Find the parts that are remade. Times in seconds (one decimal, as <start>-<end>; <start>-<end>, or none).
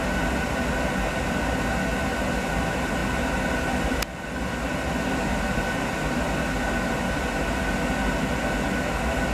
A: none